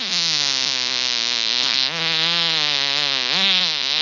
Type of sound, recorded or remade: recorded